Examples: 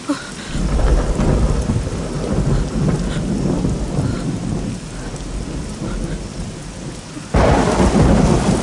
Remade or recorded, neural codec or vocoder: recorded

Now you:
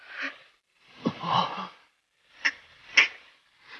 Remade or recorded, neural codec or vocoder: recorded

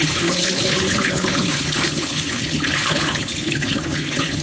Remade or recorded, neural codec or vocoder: remade, codec, HILCodec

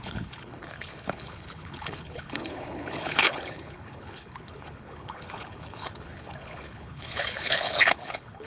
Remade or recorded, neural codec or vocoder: remade, codec, HILCodec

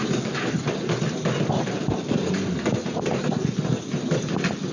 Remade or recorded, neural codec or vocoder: recorded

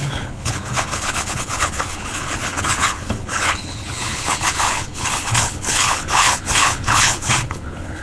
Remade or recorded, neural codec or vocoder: remade, codec, HILCodec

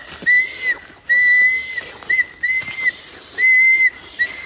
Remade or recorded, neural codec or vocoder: recorded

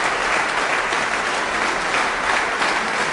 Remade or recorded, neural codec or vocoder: recorded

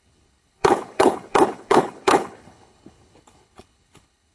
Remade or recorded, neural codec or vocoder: remade, codec, HILCodec